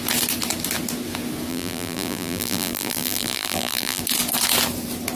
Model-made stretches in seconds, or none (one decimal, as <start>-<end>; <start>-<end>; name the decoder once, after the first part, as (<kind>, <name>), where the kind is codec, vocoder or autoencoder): 1.5-4.0 (vocoder, BigVGAN v2)